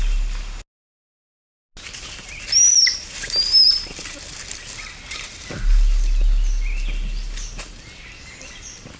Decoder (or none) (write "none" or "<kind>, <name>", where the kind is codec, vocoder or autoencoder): none